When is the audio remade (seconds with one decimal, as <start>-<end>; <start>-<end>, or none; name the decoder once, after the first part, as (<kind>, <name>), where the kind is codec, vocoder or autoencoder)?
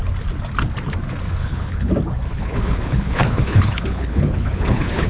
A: 1.4-1.9 (codec, HILCodec); 2.3-5.1